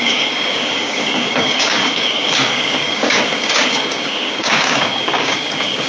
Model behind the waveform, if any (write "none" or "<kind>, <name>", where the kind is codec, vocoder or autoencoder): codec, DAC